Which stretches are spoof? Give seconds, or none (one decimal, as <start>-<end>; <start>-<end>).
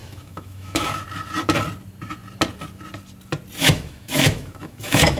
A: 0.0-1.0; 3.6-5.2